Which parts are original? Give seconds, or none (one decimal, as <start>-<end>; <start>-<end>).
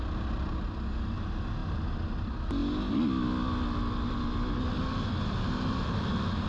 0.0-6.5